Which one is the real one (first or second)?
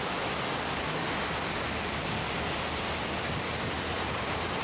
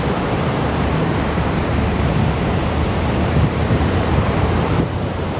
first